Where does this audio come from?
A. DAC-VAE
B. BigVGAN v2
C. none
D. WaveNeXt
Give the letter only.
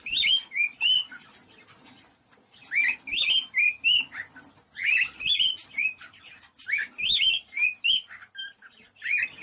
C